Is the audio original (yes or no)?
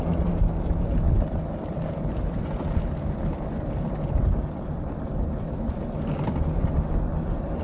yes